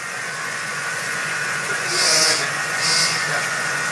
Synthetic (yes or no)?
yes